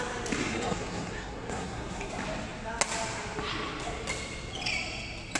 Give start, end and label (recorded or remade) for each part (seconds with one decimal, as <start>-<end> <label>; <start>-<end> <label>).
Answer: 0.0-0.4 recorded; 0.4-2.1 remade; 2.1-5.4 recorded